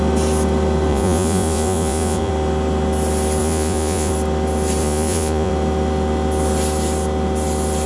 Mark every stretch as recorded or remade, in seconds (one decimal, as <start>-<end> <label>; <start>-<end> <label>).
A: 0.0-0.9 recorded; 0.9-2.3 remade; 2.3-3.4 recorded; 3.4-4.1 remade; 4.1-4.8 recorded; 4.8-5.5 remade; 5.5-7.9 recorded